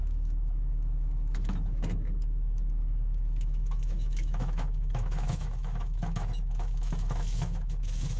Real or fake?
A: fake